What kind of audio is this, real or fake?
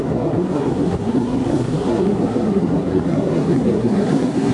fake